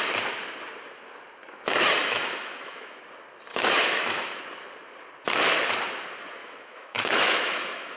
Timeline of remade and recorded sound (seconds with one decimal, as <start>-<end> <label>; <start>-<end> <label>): 0.0-2.0 recorded; 2.0-3.0 remade; 3.0-3.5 recorded; 3.5-4.4 remade; 4.4-6.4 recorded; 6.4-8.0 remade